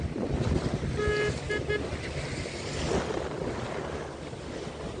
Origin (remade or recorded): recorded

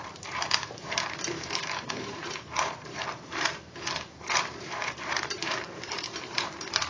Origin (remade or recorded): remade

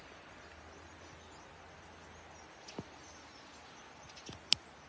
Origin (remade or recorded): recorded